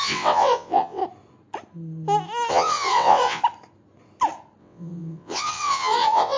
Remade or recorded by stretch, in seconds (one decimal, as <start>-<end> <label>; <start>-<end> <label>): 0.0-1.0 remade; 1.0-2.5 recorded; 2.5-3.4 remade; 3.4-4.6 recorded; 4.6-6.4 remade